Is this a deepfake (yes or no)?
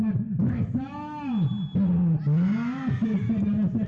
no